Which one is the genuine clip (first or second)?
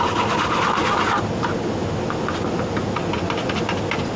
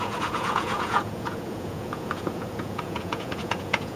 first